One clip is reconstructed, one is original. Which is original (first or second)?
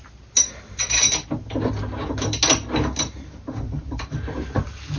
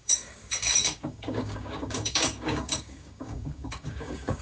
first